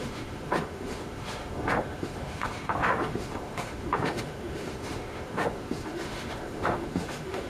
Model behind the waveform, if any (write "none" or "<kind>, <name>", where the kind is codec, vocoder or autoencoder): autoencoder, DAC-VAE